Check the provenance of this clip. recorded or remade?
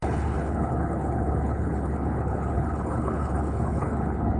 remade